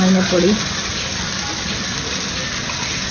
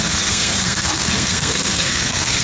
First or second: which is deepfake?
second